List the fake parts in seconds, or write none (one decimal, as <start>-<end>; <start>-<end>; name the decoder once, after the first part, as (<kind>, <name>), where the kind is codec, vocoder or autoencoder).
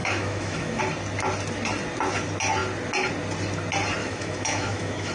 0.0-0.8 (autoencoder, DAC-VAE); 4.0-5.1